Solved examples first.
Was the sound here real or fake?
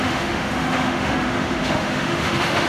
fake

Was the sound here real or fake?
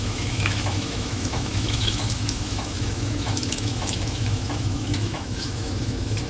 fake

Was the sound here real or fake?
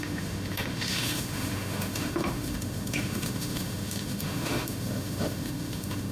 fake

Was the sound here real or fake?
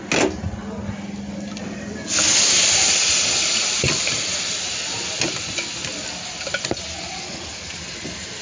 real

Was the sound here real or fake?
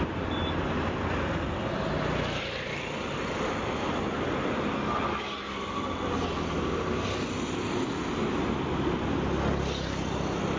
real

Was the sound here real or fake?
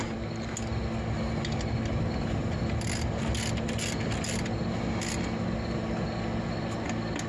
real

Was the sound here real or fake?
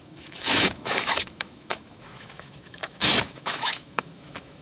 fake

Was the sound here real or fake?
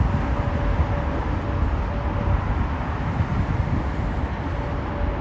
real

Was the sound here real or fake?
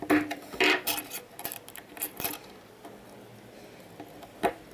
real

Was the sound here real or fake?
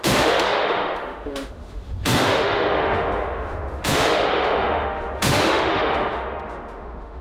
fake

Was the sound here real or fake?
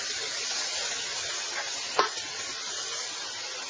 real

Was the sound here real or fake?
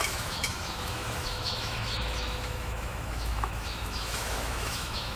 fake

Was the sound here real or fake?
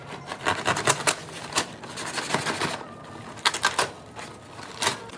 real